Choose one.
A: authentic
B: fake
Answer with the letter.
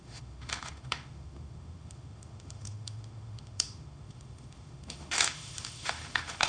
B